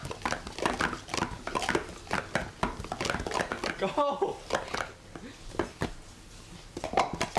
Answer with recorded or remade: recorded